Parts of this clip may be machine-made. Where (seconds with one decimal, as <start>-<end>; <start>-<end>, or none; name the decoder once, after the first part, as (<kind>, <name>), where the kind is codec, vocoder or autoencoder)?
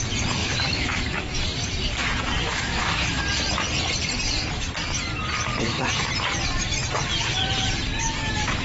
0.4-1.0 (autoencoder, DAC-VAE); 2.4-3.2; 5.5-6.1